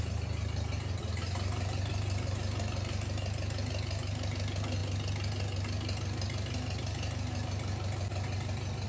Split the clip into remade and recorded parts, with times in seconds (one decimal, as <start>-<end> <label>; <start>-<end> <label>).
0.0-8.9 recorded